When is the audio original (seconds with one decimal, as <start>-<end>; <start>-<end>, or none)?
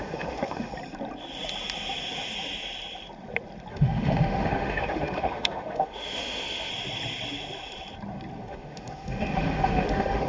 0.7-3.7; 6.7-8.4